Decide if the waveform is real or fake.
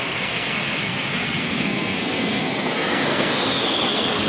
fake